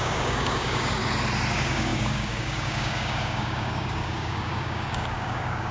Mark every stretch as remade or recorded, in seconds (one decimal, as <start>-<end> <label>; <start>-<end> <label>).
0.0-1.0 remade; 1.0-1.5 recorded; 1.5-5.7 remade